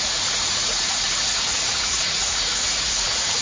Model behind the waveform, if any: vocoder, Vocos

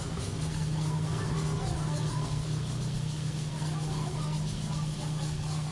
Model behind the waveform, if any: codec, SNAC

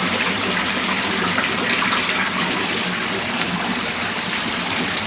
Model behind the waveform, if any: vocoder, BigVGAN v2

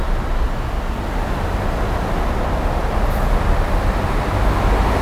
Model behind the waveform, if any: none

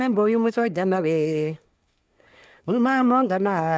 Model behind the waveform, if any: codec, SNAC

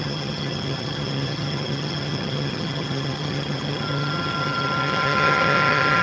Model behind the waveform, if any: vocoder, HiFi-GAN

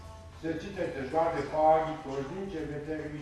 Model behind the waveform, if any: none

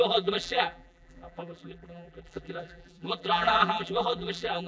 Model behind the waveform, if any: vocoder, BigVGAN v2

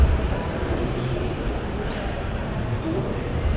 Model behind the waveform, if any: vocoder, BigVGAN v2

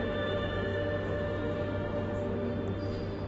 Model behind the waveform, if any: none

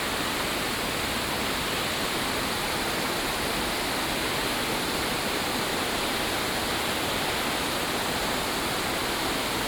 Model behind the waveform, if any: none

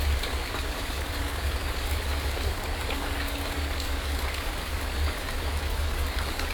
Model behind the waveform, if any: codec, DAC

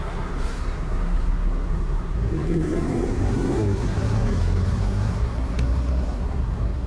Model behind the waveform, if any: codec, SNAC